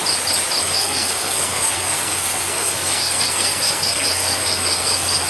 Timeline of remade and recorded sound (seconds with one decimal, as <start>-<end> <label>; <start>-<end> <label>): 0.0-0.6 recorded; 0.6-5.3 remade